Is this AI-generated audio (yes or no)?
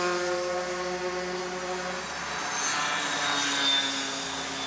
no